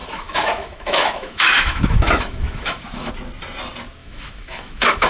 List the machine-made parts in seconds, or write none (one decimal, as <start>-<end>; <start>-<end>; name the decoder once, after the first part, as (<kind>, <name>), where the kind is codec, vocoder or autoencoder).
0.0-3.1 (autoencoder, DAC-VAE); 4.0-5.1